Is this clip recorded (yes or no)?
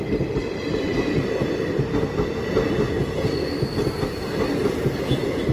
yes